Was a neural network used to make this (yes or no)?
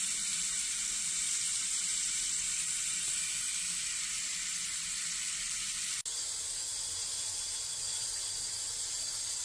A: no